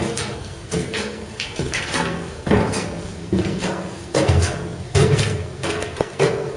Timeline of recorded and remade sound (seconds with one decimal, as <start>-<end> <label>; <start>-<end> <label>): 0.0-6.6 remade